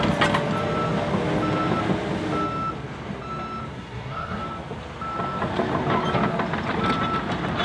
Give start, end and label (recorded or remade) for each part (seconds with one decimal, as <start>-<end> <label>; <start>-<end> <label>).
0.0-3.7 recorded; 3.7-4.4 remade; 4.4-7.6 recorded